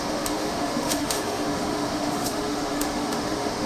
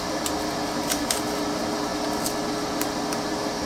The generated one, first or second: first